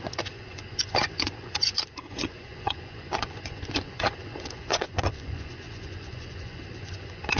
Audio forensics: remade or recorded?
remade